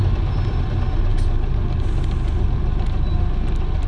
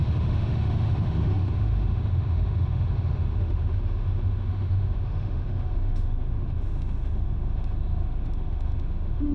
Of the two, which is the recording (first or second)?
first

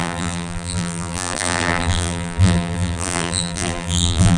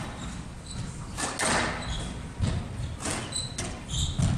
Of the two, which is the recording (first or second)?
second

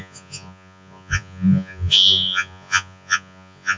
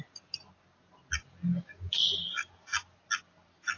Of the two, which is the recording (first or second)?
second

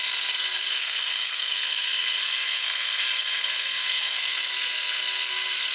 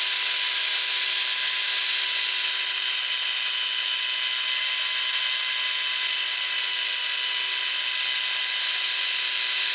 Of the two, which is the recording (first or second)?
second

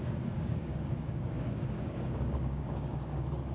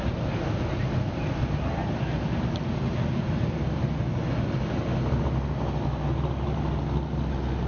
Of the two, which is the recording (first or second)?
second